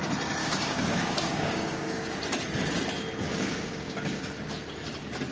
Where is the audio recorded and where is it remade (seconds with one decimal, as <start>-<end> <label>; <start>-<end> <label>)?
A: 0.0-0.4 recorded; 0.4-2.2 remade; 2.2-3.3 recorded; 3.3-4.2 remade; 4.2-5.3 recorded